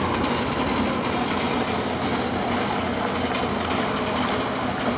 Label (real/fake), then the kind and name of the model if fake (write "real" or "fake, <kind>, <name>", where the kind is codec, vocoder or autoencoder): real